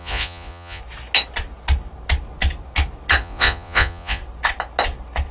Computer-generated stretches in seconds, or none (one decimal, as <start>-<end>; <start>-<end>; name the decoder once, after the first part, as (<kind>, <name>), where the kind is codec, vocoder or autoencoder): 0.0-0.8 (vocoder, Vocos); 3.2-4.2